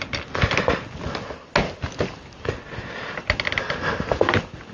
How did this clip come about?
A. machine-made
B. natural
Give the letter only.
B